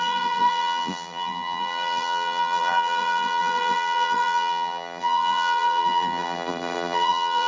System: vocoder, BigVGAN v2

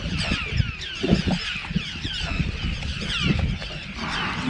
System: none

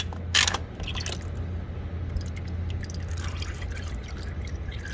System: none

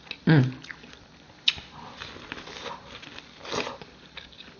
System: none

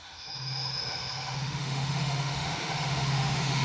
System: autoencoder, DAC-VAE